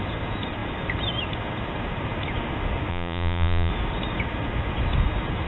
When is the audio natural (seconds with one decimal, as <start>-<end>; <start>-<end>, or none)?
0.0-2.9; 3.7-5.5